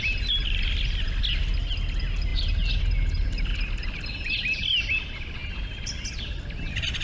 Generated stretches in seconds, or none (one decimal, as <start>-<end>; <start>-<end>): none